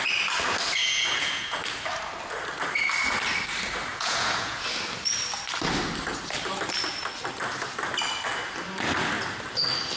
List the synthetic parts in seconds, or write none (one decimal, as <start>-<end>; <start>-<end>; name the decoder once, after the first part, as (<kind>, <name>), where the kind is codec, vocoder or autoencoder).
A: 0.8-1.6 (vocoder, Vocos); 3.9-4.6